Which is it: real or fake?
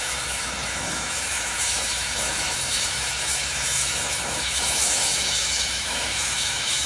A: fake